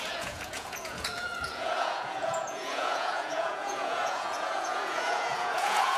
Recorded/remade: remade